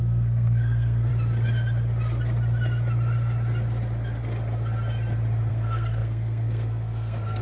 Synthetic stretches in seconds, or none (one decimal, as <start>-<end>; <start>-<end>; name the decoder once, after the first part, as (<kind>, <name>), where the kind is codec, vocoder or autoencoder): 0.0-1.1 (codec, SNAC); 5.5-7.4